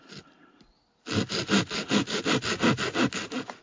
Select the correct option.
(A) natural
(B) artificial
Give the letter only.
A